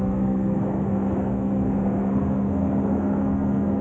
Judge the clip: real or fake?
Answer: fake